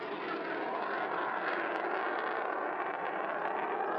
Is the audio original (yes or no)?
yes